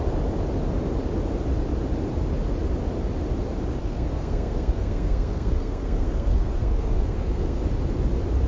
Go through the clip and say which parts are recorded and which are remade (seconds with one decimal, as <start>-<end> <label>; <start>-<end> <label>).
0.0-3.8 recorded; 3.8-7.6 remade; 7.6-8.5 recorded